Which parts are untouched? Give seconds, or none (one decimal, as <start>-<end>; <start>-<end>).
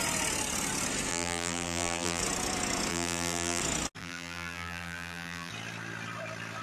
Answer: 0.0-1.1; 2.2-2.9; 3.6-4.0; 5.5-6.6